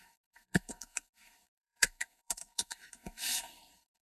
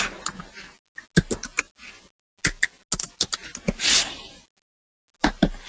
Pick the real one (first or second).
second